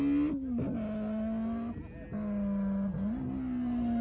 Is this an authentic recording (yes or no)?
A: yes